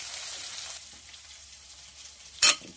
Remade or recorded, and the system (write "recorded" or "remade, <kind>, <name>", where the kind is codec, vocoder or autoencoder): recorded